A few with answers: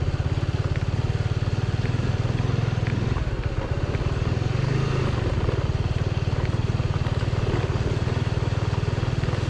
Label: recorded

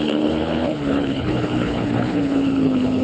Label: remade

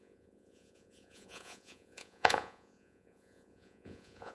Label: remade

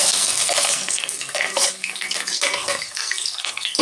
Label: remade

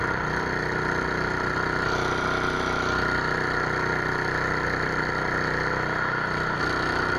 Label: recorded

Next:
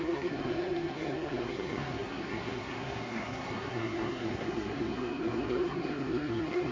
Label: remade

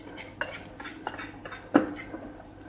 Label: recorded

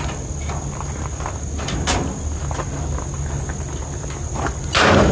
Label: recorded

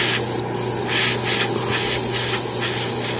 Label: recorded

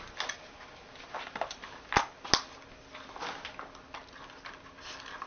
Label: recorded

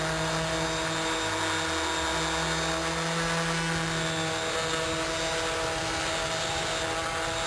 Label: recorded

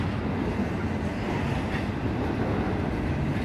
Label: recorded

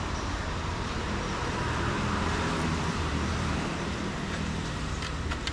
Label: remade